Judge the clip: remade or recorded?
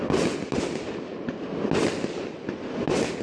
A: recorded